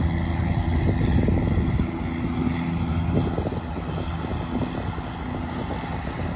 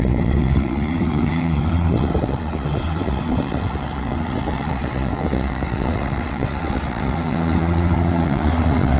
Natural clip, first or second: first